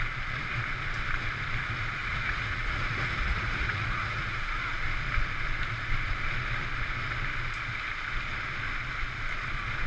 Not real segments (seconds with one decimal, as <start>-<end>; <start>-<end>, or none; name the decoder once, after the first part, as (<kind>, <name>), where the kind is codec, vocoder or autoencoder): 2.0-4.7 (vocoder, Vocos)